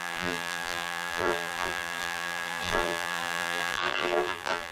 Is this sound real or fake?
fake